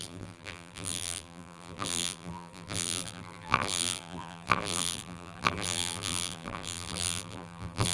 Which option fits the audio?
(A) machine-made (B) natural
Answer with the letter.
A